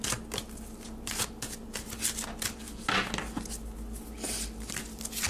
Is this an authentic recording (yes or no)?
yes